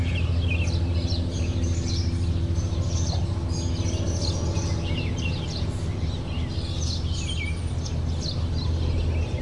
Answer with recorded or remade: recorded